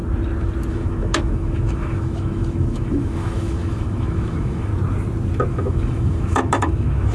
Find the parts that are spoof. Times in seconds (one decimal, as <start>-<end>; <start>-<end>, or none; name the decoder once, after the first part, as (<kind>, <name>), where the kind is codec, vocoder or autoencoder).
0.7-4.7 (autoencoder, DAC-VAE); 5.5-7.1